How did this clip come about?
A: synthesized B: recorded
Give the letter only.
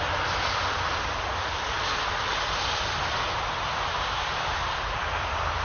A